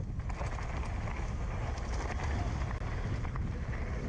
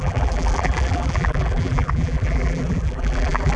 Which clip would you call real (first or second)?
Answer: first